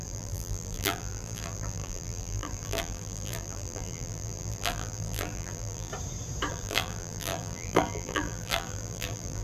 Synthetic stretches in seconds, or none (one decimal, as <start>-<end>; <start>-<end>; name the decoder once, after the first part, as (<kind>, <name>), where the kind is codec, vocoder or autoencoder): 0.0-5.9 (vocoder, BigVGAN v2); 6.5-9.4